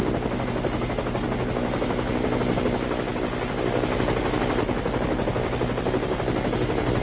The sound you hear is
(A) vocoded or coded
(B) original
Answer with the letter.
B